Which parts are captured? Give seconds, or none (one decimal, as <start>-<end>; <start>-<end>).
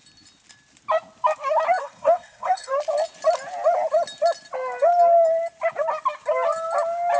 0.0-1.8; 2.7-7.2